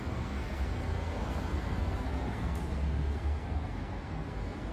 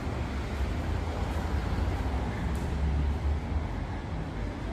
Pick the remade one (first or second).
first